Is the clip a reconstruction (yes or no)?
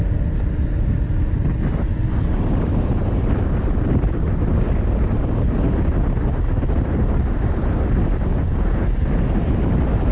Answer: no